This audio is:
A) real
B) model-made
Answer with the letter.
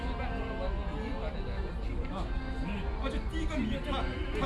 A